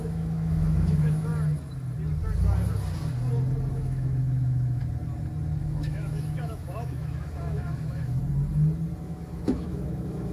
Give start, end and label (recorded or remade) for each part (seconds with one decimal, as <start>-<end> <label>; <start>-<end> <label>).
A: 0.0-1.3 remade; 1.3-3.7 recorded; 3.7-4.8 remade; 4.8-5.6 recorded; 5.6-8.2 remade; 8.2-9.0 recorded; 9.0-10.3 remade